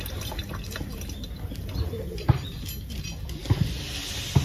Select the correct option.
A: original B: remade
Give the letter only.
A